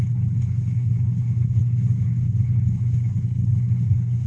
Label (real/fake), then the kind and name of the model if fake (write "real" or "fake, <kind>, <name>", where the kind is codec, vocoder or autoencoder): fake, codec, HILCodec